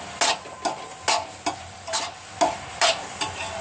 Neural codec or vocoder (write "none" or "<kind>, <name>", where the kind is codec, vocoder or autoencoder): none